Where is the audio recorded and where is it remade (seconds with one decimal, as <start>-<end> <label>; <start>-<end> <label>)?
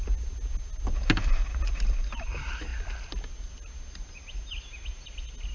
0.0-5.5 recorded